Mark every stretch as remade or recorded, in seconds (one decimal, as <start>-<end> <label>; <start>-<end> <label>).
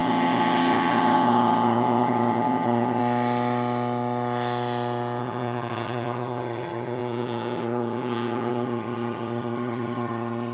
0.0-3.0 remade; 3.0-5.2 recorded; 5.2-10.5 remade